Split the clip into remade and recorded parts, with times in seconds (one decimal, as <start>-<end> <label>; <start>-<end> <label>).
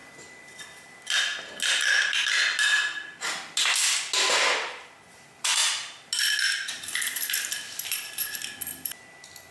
0.0-9.5 recorded